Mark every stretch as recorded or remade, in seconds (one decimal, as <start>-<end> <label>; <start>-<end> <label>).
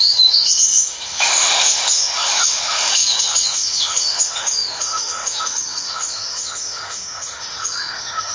0.0-8.3 remade